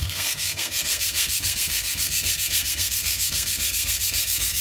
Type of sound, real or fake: fake